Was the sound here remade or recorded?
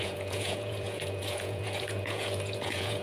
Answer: remade